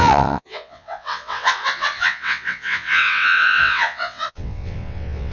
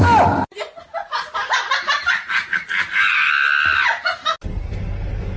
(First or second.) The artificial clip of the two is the first